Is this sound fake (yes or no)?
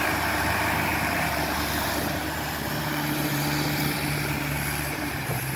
yes